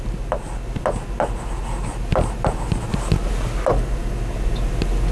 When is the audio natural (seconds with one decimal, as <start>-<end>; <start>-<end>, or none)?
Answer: 0.0-5.1